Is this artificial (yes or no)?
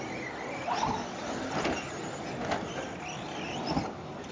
no